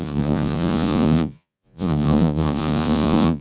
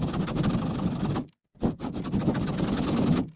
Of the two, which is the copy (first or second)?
first